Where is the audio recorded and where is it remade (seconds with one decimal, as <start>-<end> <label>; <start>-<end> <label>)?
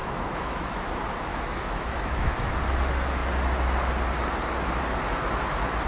0.0-0.9 remade; 0.9-1.3 recorded; 1.3-2.5 remade; 2.5-5.9 recorded